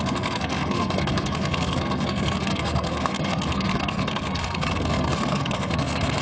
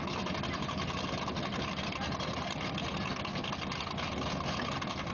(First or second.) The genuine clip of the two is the second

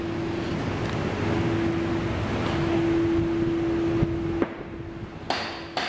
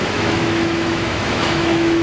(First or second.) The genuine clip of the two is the first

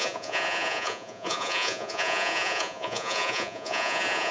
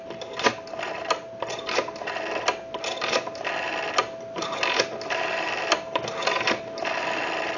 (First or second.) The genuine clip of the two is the second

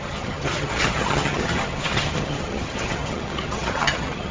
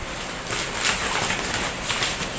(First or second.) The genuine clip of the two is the second